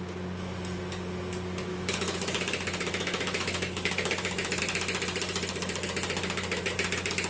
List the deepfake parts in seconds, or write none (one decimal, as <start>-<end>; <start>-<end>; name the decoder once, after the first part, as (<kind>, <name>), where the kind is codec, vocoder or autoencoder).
1.7-4.6 (autoencoder, DAC-VAE)